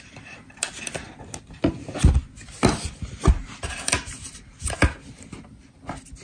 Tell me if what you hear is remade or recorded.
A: recorded